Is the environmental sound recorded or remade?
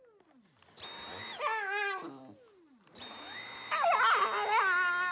recorded